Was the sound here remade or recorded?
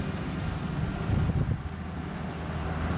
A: recorded